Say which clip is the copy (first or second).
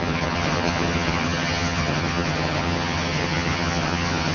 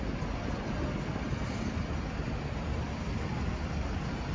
first